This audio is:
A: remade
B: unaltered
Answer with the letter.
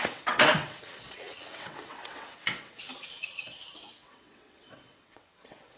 A